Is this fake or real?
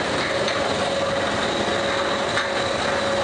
real